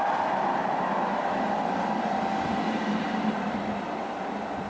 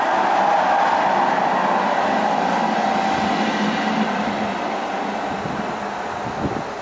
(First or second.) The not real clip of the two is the first